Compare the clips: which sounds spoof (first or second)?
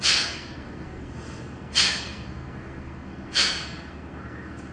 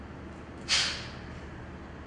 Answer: first